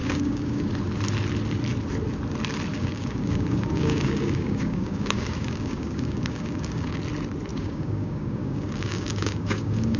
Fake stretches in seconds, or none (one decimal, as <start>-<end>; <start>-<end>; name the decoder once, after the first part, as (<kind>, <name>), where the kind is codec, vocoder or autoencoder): 0.0-0.7 (codec, DAC); 2.7-7.0; 7.5-10.0